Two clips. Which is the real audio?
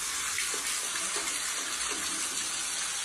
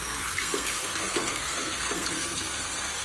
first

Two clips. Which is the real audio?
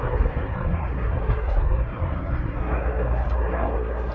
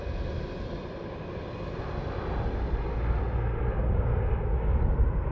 second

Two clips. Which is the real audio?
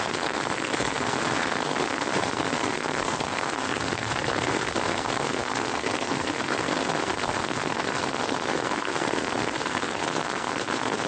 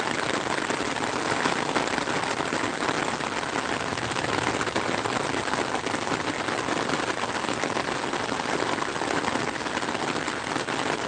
second